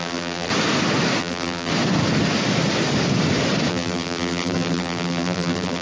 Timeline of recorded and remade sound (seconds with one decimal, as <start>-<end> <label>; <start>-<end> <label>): 0.0-0.5 remade; 0.5-1.2 recorded; 1.2-1.7 remade; 1.7-3.7 recorded; 3.7-5.8 remade